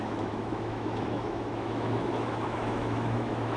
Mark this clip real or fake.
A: fake